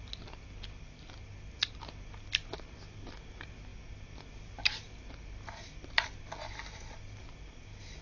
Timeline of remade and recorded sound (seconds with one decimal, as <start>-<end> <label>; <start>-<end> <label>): 0.0-8.0 recorded